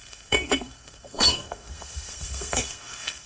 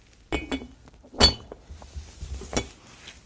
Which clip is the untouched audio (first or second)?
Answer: second